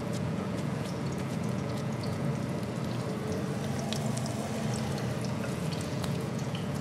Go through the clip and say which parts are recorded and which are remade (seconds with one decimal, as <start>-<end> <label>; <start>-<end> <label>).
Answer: 0.0-2.3 remade; 2.3-5.3 recorded; 5.3-6.8 remade